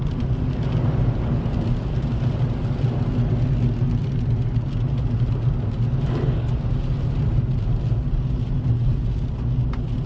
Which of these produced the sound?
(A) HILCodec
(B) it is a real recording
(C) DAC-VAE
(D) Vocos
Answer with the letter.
B